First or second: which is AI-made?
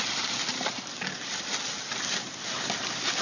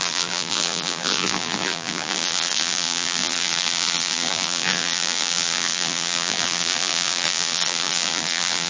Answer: second